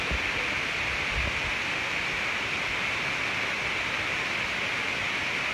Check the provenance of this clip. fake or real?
real